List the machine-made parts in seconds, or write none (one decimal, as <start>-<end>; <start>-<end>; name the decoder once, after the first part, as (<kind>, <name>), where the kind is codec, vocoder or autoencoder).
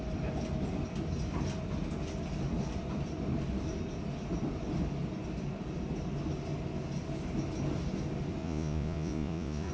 8.4-9.7 (vocoder, Vocos)